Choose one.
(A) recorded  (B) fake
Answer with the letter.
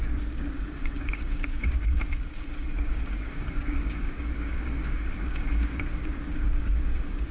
B